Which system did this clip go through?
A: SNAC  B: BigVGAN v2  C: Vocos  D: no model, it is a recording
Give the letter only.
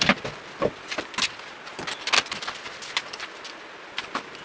D